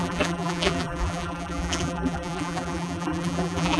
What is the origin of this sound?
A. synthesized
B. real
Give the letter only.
A